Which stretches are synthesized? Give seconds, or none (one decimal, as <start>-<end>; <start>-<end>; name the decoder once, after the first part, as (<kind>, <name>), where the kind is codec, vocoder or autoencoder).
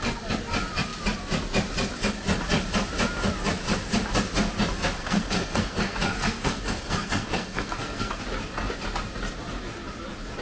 5.0-8.2 (codec, SNAC)